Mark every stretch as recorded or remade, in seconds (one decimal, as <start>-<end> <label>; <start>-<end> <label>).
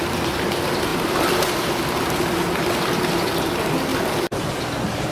0.0-0.9 remade; 0.9-3.4 recorded; 3.4-5.1 remade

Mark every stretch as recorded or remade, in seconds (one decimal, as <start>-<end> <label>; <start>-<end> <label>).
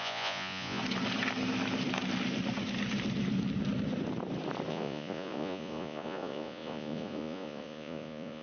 0.0-0.8 remade; 0.8-4.7 recorded; 4.7-8.4 remade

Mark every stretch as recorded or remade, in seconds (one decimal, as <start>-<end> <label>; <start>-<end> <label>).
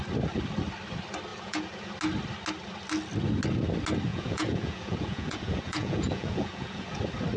0.0-1.3 recorded; 1.3-1.9 remade; 1.9-4.1 recorded; 4.1-7.0 remade; 7.0-7.4 recorded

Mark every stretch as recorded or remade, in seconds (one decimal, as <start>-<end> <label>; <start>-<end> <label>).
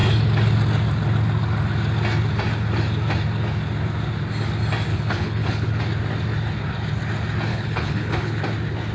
0.0-4.9 recorded; 4.9-5.8 remade; 5.8-7.5 recorded; 7.5-8.4 remade; 8.4-8.9 recorded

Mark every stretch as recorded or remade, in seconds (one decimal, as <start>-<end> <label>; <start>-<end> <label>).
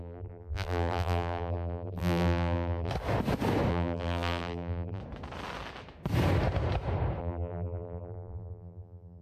0.0-2.9 remade; 2.9-3.7 recorded; 3.7-5.0 remade; 5.0-7.2 recorded; 7.2-9.2 remade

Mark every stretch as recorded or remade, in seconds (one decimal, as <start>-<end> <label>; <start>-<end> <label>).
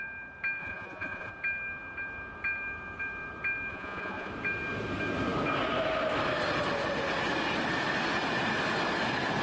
0.0-0.6 recorded; 0.6-1.3 remade; 1.3-3.7 recorded; 3.7-4.3 remade; 4.3-9.4 recorded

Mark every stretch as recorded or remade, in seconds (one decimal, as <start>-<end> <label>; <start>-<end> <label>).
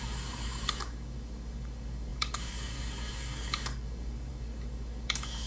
0.0-5.5 remade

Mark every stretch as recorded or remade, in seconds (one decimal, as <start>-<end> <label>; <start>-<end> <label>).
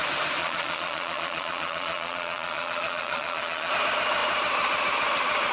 0.0-0.4 recorded; 0.4-3.7 remade; 3.7-5.5 recorded